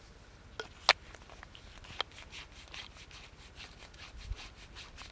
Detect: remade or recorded recorded